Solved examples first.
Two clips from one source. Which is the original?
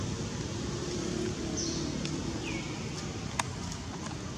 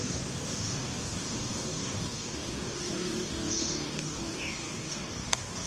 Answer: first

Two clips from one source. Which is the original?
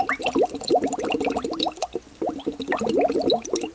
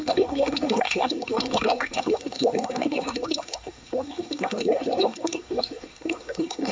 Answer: first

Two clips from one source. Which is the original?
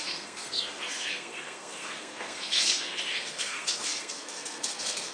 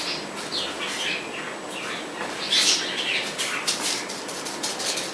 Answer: second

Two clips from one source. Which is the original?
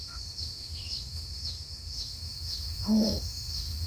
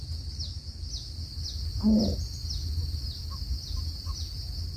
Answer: second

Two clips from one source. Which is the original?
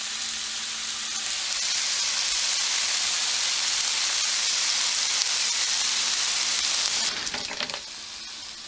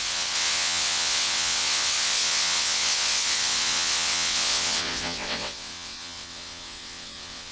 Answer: first